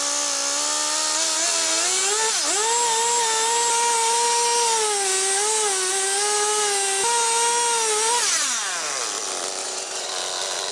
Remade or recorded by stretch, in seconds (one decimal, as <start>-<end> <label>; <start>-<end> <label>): 0.0-9.6 recorded; 9.6-10.1 remade; 10.1-10.7 recorded